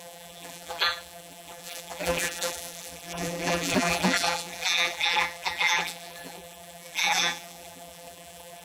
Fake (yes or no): yes